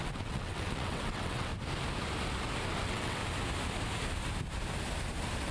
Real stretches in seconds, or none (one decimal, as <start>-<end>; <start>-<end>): 1.5-2.8; 3.2-5.5